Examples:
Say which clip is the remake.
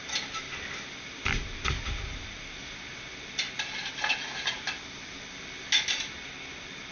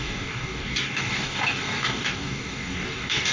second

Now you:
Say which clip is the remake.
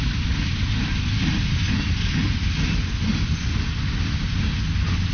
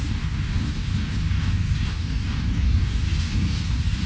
second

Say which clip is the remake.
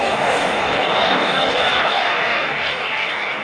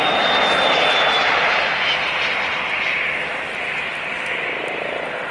first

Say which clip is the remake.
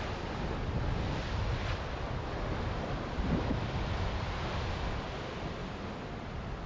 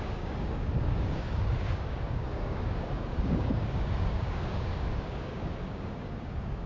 second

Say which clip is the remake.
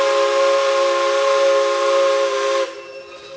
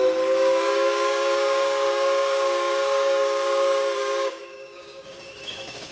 second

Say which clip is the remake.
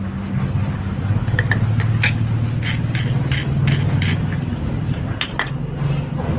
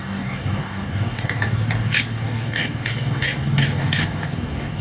second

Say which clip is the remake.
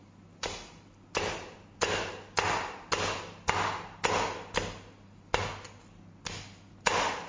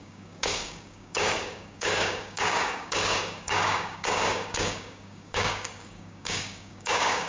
second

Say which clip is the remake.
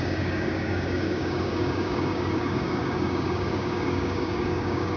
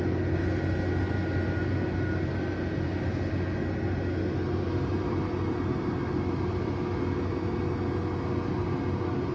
first